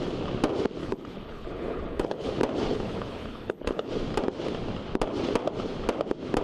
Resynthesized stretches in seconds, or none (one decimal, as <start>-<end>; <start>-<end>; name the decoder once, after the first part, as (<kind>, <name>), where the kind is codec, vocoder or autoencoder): 0.8-2.3 (codec, HILCodec); 2.7-3.9